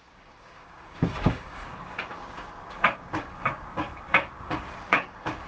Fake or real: fake